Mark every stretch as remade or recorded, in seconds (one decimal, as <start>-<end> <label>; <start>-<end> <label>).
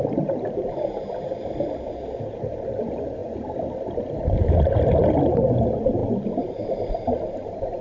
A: 0.0-7.8 recorded